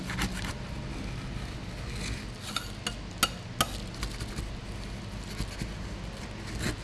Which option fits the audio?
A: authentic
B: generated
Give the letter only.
A